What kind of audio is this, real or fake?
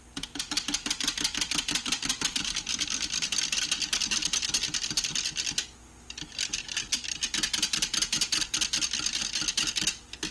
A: real